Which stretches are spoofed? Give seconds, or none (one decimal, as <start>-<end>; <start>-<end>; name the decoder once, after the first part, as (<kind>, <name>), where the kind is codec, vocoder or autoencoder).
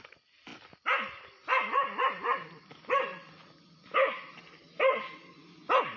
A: none